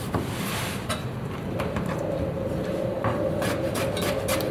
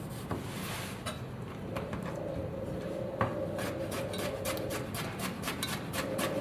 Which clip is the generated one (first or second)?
first